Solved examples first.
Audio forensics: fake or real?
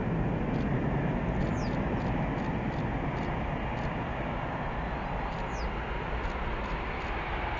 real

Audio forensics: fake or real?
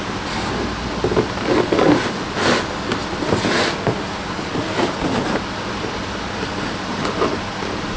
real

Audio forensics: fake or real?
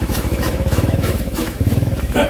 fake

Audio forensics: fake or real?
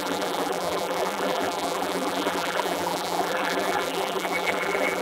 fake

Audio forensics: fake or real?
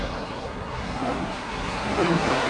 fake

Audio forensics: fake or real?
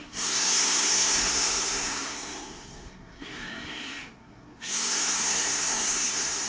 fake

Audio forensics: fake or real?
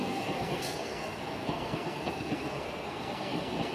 fake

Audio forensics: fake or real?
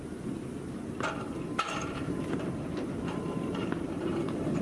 fake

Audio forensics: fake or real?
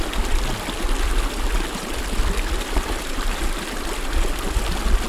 real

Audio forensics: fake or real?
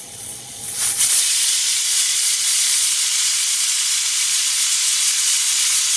fake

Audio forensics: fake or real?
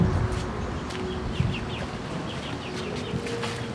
real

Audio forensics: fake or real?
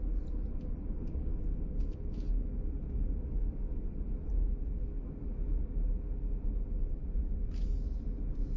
real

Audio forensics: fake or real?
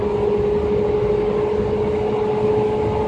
real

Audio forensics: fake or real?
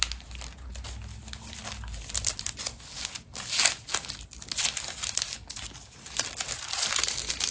real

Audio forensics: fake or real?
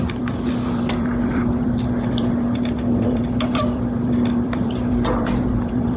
fake